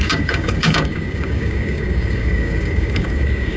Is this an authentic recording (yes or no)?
no